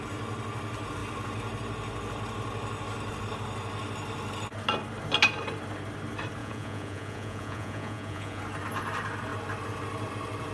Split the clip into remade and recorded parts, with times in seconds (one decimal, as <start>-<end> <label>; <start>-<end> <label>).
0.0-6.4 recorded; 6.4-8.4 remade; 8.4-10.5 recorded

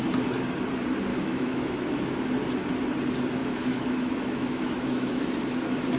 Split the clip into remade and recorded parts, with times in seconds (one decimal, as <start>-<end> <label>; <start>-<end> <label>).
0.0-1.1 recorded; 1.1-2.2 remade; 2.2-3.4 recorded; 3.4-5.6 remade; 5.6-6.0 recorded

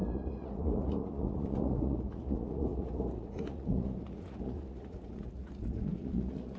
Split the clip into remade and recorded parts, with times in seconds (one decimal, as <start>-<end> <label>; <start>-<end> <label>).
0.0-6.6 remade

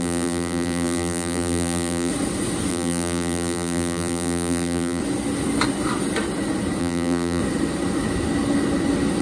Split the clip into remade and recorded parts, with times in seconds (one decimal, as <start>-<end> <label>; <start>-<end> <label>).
0.0-2.1 remade; 2.1-2.7 recorded; 2.7-5.0 remade; 5.0-6.8 recorded; 6.8-7.4 remade; 7.4-9.2 recorded

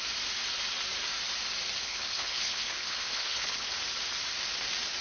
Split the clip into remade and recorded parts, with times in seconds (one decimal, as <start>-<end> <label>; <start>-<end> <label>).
0.0-1.9 recorded; 1.9-3.7 remade; 3.7-5.0 recorded

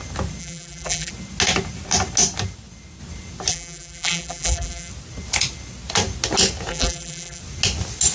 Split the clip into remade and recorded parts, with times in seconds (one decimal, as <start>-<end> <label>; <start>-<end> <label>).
0.0-0.4 recorded; 0.4-1.1 remade; 1.1-3.5 recorded; 3.5-4.9 remade; 4.9-6.7 recorded; 6.7-7.4 remade; 7.4-8.1 recorded

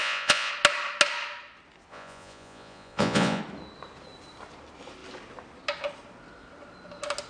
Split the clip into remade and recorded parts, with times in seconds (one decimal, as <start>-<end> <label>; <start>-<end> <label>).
0.0-0.5 remade; 0.5-1.9 recorded; 1.9-3.4 remade; 3.4-7.3 recorded

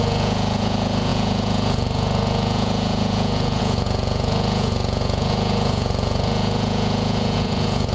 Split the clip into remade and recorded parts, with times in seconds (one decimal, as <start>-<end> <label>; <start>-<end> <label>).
0.0-7.9 remade